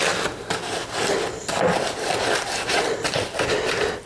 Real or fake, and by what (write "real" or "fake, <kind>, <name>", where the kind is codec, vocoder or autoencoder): real